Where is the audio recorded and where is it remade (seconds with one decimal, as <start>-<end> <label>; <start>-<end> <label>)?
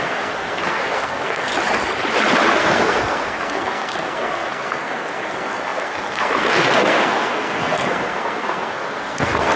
0.0-1.5 remade; 1.5-2.5 recorded; 2.5-9.6 remade